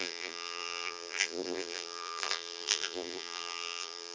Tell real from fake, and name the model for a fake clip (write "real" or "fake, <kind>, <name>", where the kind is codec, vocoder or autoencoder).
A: fake, vocoder, BigVGAN v2